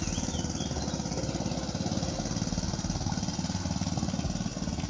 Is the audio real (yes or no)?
yes